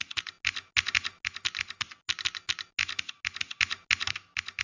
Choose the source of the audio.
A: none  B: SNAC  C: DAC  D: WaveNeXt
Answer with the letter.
A